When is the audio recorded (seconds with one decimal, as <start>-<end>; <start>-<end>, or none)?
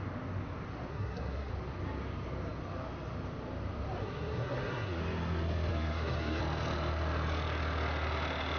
0.0-0.9; 1.5-4.0; 5.0-5.7; 6.4-8.6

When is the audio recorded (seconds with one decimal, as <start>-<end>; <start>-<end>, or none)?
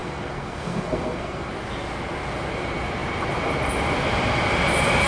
1.5-5.1